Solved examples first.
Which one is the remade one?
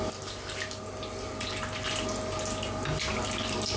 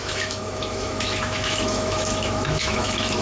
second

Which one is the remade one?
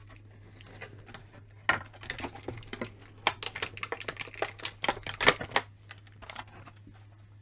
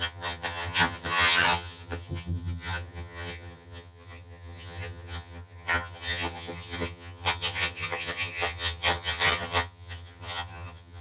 second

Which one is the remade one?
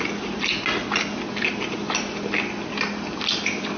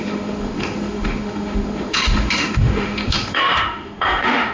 second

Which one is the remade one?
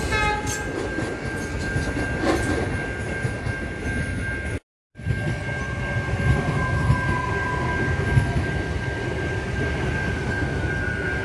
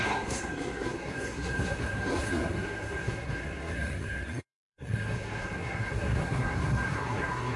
second